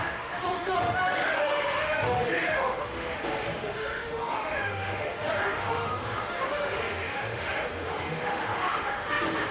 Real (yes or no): no